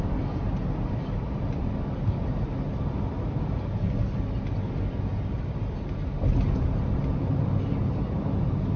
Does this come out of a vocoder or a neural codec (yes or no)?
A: no